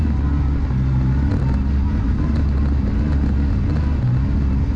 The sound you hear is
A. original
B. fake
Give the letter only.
A